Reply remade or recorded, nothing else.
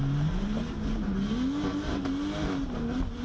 recorded